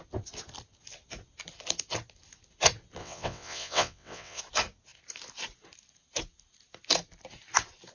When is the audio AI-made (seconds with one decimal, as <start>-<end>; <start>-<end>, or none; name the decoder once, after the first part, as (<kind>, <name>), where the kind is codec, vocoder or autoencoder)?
3.0-4.4 (vocoder, WaveNeXt)